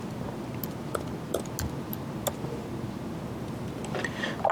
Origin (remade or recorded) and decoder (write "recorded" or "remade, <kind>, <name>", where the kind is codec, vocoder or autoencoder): recorded